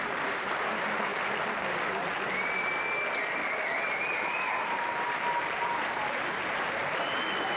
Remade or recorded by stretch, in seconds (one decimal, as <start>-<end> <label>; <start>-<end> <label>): 0.0-1.1 remade; 1.1-4.2 recorded; 4.2-6.8 remade; 6.8-7.6 recorded